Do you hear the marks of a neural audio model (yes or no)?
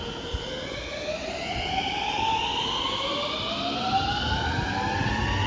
no